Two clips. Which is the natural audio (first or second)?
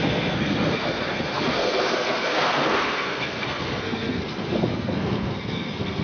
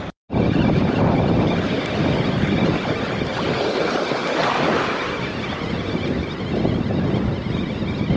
second